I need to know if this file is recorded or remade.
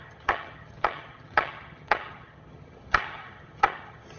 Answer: remade